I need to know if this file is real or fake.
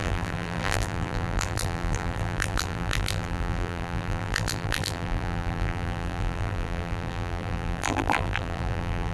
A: fake